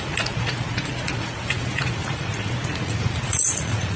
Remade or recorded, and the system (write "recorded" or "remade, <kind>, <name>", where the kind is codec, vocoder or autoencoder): remade, vocoder, Vocos